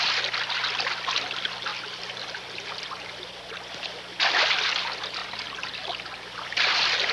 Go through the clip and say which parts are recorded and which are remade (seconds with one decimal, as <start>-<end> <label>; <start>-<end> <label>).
0.0-7.1 recorded